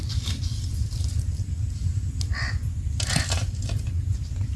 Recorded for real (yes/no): yes